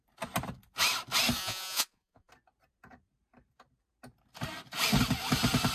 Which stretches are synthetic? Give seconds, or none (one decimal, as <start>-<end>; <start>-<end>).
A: 1.4-2.3